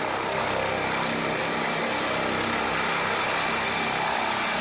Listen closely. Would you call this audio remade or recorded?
recorded